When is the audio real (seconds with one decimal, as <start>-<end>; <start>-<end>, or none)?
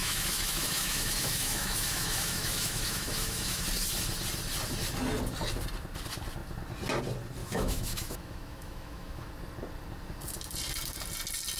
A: 3.6-7.4; 9.3-11.6